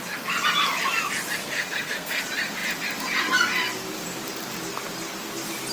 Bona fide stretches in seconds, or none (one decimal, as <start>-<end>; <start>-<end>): 0.0-1.4; 2.2-5.7